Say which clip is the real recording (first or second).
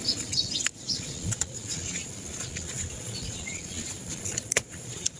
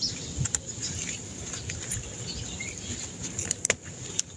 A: second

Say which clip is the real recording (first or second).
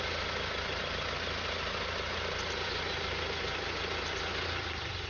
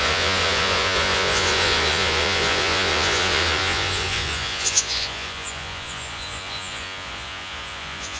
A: first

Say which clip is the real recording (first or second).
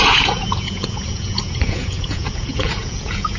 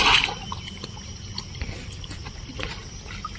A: second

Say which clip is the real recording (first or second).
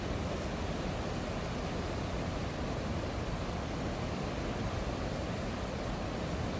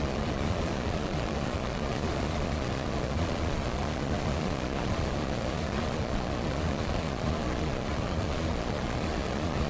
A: first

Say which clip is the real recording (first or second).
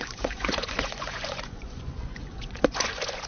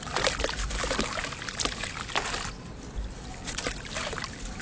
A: second